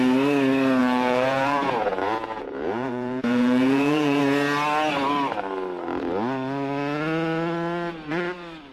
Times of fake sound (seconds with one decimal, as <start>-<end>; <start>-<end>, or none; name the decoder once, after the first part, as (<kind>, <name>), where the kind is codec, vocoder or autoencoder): 0.8-4.2 (vocoder, Vocos)